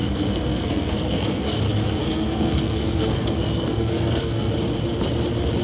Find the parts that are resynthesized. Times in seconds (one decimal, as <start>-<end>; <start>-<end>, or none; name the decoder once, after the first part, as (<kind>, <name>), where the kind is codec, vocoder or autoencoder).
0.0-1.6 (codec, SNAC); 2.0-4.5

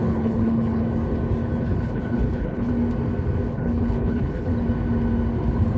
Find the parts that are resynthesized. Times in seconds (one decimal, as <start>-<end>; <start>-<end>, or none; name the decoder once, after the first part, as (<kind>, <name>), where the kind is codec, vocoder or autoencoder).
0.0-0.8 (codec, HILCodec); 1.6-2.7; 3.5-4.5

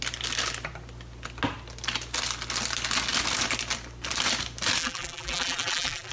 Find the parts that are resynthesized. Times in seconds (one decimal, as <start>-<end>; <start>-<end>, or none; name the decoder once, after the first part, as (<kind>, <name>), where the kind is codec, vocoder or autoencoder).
4.8-6.1 (vocoder, BigVGAN v2)

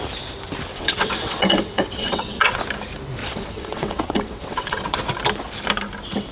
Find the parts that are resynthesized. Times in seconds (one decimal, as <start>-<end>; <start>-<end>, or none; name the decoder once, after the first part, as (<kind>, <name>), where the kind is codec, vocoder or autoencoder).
0.7-2.6 (vocoder, WaveNeXt); 3.2-5.0